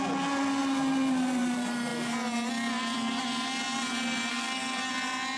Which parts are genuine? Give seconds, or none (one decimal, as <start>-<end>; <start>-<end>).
0.0-4.3; 4.9-5.4